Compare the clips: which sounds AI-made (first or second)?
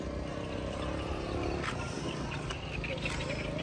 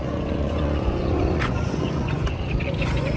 second